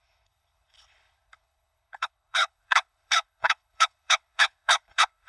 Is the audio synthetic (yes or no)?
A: yes